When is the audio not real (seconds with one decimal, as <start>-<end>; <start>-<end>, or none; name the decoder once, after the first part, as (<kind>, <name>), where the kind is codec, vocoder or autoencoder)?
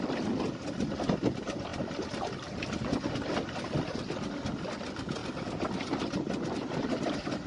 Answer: none